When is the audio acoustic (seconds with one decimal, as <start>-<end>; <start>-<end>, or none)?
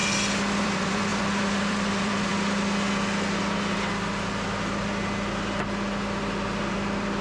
0.0-0.6; 2.3-6.6